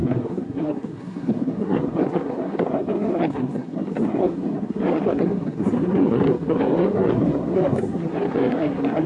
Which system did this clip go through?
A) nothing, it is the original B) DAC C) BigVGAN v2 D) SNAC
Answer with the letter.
D